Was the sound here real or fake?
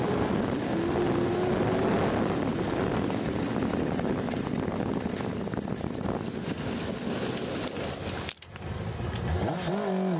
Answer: real